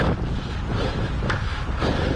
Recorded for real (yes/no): yes